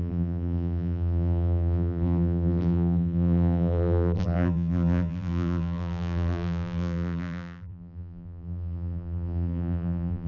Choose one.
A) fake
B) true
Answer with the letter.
A